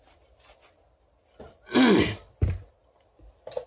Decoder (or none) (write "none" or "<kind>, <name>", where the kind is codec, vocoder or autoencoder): none